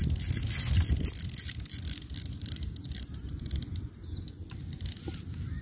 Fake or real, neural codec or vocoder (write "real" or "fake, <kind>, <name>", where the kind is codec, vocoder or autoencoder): real